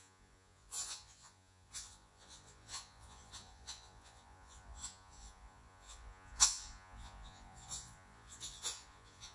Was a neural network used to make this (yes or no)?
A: yes